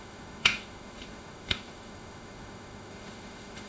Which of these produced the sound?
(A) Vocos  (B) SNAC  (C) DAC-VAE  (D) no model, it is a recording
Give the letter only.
C